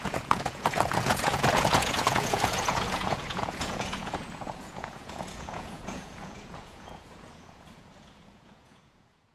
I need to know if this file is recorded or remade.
remade